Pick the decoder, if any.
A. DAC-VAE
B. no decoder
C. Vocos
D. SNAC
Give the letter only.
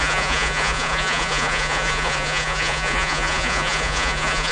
C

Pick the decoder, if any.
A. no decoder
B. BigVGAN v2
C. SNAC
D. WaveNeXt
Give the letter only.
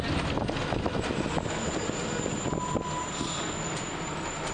A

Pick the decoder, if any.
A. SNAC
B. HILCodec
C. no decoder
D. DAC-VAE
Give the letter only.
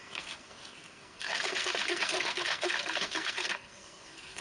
A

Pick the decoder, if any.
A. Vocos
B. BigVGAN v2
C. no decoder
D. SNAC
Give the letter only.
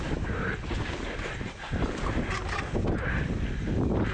C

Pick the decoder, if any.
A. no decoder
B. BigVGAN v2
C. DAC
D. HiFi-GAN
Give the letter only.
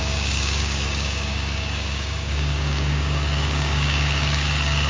C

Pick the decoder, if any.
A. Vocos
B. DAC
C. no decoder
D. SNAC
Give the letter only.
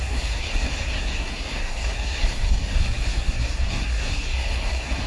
D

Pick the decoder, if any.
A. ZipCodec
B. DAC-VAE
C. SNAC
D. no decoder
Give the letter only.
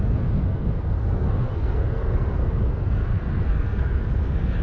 C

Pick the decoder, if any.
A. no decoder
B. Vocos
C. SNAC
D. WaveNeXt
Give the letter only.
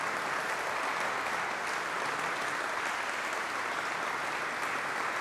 A